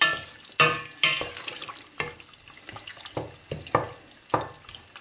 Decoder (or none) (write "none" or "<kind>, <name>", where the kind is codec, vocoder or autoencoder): none